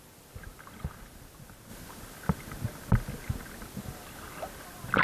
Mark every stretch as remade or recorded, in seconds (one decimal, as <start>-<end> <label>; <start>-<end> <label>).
0.0-5.0 recorded